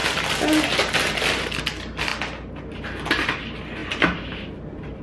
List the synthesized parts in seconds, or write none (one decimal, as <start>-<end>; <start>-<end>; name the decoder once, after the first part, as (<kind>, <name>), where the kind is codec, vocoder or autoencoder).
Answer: 1.6-2.1 (vocoder, BigVGAN v2); 2.7-5.0